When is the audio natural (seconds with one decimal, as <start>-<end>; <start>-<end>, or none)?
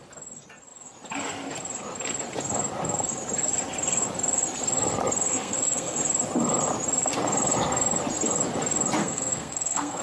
0.0-5.3; 6.0-9.0